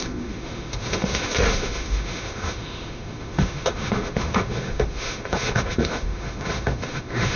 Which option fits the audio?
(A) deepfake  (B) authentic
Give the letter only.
A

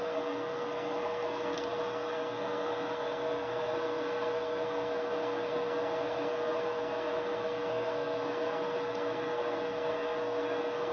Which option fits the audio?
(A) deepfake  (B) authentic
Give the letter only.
A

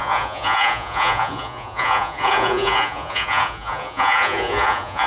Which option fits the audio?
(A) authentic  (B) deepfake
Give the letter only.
B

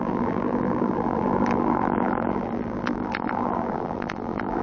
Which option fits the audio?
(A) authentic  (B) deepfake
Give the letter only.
B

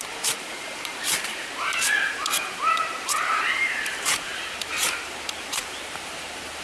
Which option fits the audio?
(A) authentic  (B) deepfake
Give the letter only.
B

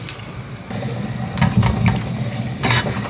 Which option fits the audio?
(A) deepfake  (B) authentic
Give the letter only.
B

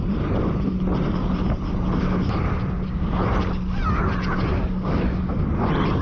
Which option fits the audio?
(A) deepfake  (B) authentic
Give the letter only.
B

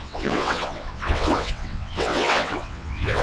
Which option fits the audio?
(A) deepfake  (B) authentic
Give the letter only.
A